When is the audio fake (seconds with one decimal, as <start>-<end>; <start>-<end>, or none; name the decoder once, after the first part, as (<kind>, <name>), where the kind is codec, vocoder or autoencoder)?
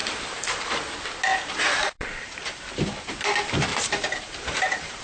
0.0-0.8 (vocoder, BigVGAN v2); 1.3-2.6; 3.7-5.0